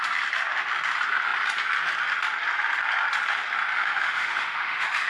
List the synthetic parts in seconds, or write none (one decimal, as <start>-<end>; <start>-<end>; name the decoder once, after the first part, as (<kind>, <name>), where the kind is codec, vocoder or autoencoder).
3.7-5.1 (autoencoder, DAC-VAE)